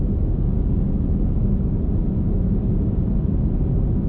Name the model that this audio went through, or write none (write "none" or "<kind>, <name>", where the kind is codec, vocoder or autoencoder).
none